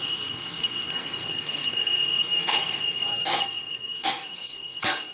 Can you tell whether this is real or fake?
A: fake